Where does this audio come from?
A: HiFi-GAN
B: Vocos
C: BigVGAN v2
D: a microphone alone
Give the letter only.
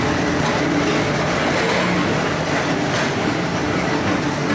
D